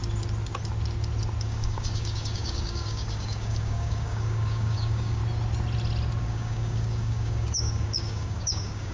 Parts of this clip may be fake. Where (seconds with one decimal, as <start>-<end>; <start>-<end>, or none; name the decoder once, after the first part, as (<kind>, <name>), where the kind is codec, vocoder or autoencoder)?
1.4-5.2 (codec, DAC); 6.2-8.9